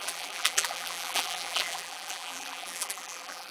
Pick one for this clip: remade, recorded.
remade